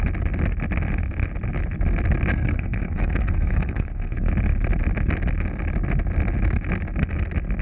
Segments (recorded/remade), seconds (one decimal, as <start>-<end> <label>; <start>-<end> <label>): 0.0-2.3 recorded; 2.3-4.3 remade; 4.3-7.6 recorded

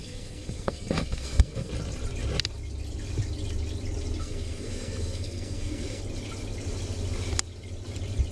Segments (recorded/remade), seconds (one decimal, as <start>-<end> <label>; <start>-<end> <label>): 0.0-1.7 remade; 1.7-4.2 recorded; 4.2-6.0 remade; 6.0-8.3 recorded